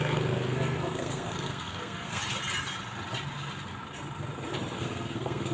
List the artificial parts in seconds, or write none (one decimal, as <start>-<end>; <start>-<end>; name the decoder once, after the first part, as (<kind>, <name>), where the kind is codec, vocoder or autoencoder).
0.0-2.2 (codec, SNAC); 4.8-5.5